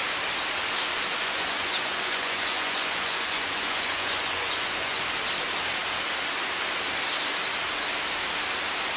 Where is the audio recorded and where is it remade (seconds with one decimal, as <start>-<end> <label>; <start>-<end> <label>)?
0.0-1.2 recorded; 1.2-5.0 remade; 5.0-9.0 recorded